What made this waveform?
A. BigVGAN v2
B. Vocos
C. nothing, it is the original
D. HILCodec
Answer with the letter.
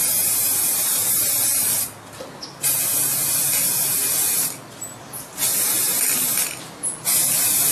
C